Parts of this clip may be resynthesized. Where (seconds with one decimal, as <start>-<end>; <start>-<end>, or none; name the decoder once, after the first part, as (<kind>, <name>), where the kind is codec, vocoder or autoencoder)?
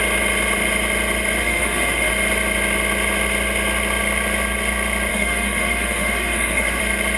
1.4-2.1 (autoencoder, DAC-VAE); 5.1-6.8